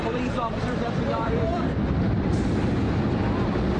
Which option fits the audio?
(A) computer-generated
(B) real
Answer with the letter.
A